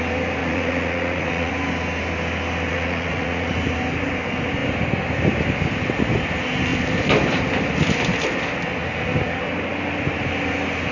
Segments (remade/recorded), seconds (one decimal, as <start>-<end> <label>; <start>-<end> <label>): 0.0-0.4 recorded; 0.4-1.5 remade; 1.5-2.7 recorded; 2.7-3.5 remade; 3.5-10.9 recorded